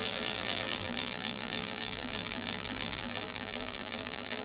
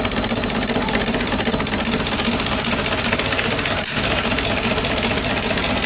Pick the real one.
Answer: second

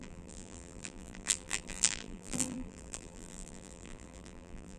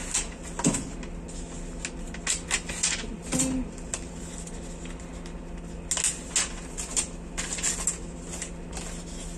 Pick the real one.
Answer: second